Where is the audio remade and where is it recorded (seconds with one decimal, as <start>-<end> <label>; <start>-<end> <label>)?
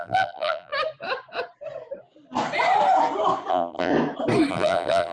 0.0-0.7 remade; 0.7-3.5 recorded; 3.5-3.9 remade; 3.9-4.5 recorded; 4.5-5.1 remade